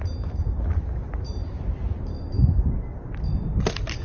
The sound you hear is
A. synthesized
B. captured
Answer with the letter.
B